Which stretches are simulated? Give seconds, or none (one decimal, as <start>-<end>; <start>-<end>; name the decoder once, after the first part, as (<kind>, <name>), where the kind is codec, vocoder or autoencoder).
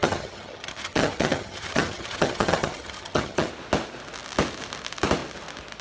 0.0-3.5 (vocoder, HiFi-GAN)